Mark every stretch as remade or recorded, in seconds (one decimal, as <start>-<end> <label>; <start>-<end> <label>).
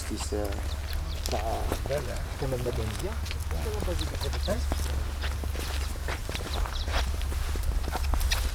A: 0.0-6.2 recorded; 6.2-7.7 remade; 7.7-8.5 recorded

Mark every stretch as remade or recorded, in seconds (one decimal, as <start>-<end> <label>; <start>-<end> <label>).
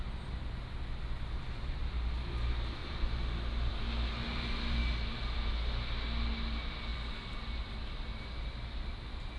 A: 0.0-9.4 recorded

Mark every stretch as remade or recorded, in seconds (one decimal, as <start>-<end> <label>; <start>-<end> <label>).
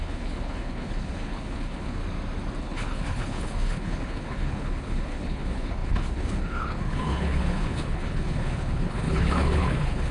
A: 0.0-2.0 remade; 2.0-2.6 recorded; 2.6-10.1 remade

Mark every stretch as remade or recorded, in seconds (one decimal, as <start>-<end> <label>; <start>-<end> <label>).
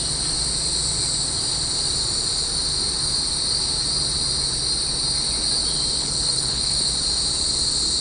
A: 0.0-6.0 recorded; 6.0-6.9 remade; 6.9-8.0 recorded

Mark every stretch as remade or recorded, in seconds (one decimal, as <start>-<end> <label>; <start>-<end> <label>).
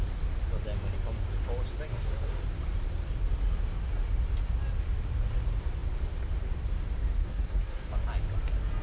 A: 0.0-1.9 recorded; 1.9-2.4 remade; 2.4-7.2 recorded; 7.2-7.9 remade; 7.9-8.8 recorded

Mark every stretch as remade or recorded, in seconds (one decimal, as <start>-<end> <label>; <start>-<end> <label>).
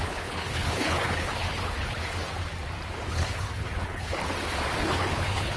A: 0.0-2.3 remade; 2.3-3.1 recorded; 3.1-4.2 remade; 4.2-4.8 recorded; 4.8-5.6 remade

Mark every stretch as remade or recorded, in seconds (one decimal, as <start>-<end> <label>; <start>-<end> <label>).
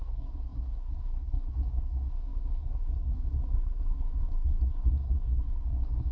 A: 0.0-6.1 remade